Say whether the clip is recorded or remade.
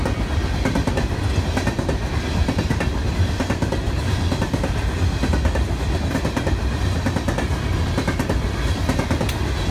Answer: recorded